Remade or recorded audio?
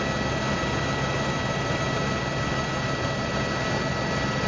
recorded